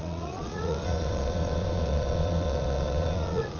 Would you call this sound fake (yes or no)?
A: yes